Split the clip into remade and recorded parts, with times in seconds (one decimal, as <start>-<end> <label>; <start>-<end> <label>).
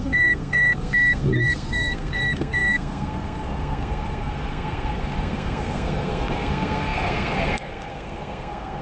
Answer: 0.0-8.8 remade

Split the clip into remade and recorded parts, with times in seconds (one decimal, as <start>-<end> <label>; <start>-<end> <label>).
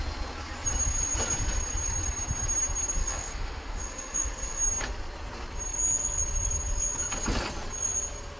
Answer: 0.0-3.0 recorded; 3.0-4.6 remade; 4.6-8.4 recorded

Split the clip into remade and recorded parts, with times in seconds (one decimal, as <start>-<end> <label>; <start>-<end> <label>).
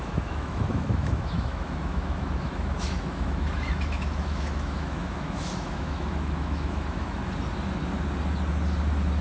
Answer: 0.0-7.2 remade; 7.2-9.2 recorded